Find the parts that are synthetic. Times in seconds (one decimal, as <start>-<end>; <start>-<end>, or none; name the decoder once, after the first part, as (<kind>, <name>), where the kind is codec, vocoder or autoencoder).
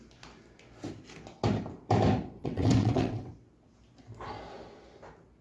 2.4-3.3 (vocoder, WaveNeXt)